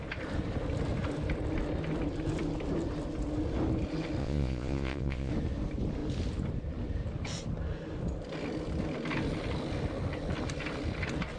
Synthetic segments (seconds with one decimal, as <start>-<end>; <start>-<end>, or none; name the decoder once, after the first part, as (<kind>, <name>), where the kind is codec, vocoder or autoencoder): 4.2-5.3 (vocoder, Vocos)